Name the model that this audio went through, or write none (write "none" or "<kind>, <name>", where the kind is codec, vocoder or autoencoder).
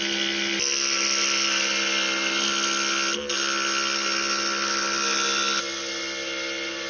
none